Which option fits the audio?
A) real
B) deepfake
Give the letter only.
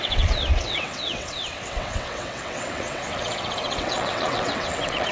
B